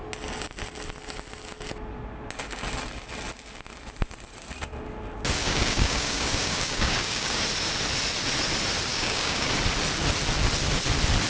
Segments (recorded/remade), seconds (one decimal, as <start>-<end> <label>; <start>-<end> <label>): 0.0-5.4 recorded; 5.4-7.4 remade; 7.4-8.9 recorded; 8.9-9.5 remade; 9.5-11.3 recorded